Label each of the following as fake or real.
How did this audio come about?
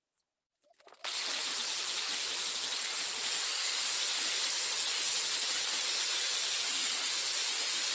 real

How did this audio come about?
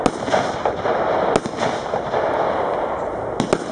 real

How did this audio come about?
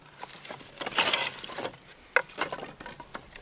real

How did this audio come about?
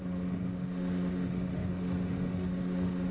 fake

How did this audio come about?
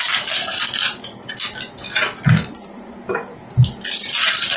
fake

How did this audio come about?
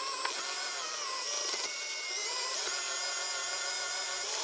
real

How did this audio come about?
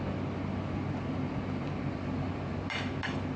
real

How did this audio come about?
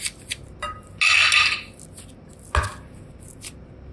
real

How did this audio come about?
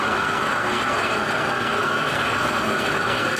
fake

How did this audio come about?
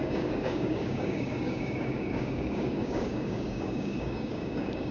fake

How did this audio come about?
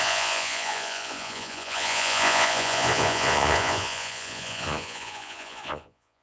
fake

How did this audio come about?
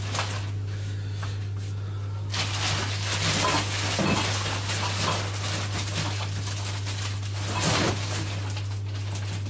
real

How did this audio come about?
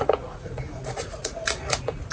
fake